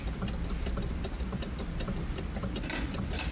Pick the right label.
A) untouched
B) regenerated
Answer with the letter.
A